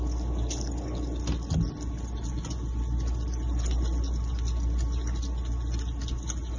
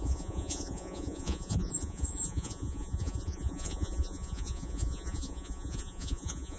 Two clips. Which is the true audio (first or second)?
first